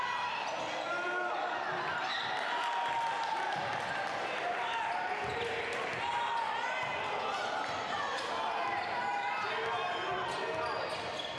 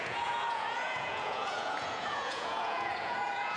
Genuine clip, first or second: first